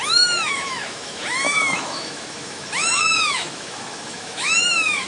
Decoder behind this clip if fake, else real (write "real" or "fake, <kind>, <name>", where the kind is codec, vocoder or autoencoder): fake, autoencoder, DAC-VAE